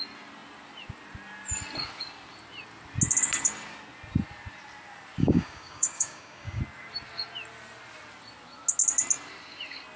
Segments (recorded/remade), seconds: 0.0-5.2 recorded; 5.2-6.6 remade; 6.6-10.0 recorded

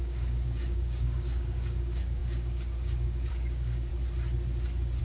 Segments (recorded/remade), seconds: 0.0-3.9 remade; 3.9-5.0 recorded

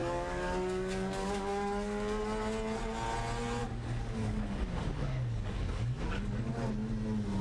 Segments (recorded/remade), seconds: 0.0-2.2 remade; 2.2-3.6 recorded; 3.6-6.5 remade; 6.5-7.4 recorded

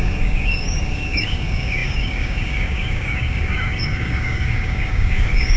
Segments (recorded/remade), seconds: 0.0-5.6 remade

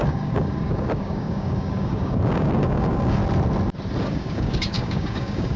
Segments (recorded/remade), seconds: 0.0-3.2 remade; 3.2-4.0 recorded; 4.0-5.6 remade